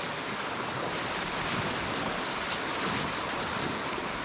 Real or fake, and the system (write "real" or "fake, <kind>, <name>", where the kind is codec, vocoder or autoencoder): real